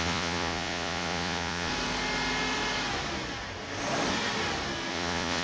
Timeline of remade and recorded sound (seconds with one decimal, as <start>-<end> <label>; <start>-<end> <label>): 0.0-1.7 remade; 1.7-4.9 recorded; 4.9-5.4 remade